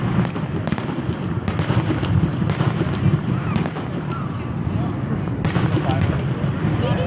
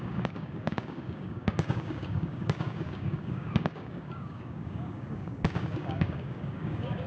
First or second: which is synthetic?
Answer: second